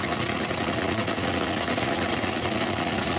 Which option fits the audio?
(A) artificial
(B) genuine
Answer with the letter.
A